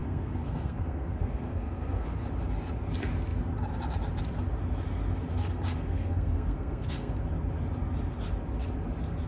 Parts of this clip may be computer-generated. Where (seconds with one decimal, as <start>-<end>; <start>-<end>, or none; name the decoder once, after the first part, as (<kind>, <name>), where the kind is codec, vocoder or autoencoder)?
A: 0.0-2.3 (codec, SNAC); 5.3-7.2